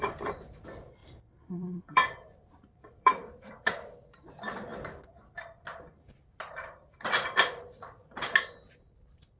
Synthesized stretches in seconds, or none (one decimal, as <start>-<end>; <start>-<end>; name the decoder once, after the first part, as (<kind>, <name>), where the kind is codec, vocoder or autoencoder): 0.0-9.4 (vocoder, BigVGAN v2)